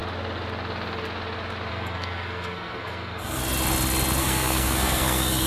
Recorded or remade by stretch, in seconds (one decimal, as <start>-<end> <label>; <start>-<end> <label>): 0.0-1.7 recorded; 1.7-3.4 remade; 3.4-4.2 recorded; 4.2-5.5 remade